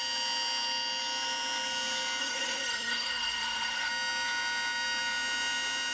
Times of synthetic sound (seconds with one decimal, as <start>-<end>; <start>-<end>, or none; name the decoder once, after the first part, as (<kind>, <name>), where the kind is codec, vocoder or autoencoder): 2.2-3.9 (codec, SNAC)